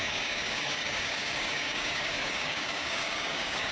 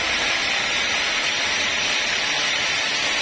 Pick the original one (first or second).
second